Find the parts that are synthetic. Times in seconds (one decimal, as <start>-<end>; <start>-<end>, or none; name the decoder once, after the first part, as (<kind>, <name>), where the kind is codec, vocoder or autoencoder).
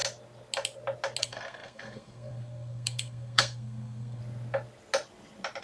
1.2-4.2 (codec, SNAC)